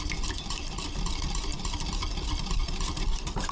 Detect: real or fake fake